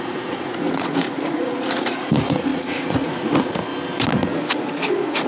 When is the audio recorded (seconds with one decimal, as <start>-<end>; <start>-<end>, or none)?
3.7-4.4